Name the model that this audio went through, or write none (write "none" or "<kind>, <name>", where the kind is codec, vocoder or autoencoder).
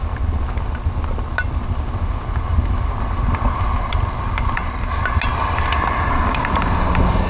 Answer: none